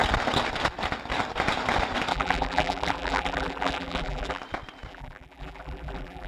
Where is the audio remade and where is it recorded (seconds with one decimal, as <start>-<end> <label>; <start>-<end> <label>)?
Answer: 0.0-2.1 recorded; 2.1-4.4 remade; 4.4-4.9 recorded; 4.9-6.3 remade